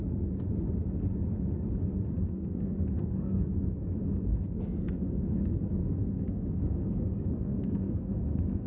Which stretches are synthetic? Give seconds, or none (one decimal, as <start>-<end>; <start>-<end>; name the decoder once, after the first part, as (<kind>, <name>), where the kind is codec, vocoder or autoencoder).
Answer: 2.2-8.7 (codec, SNAC)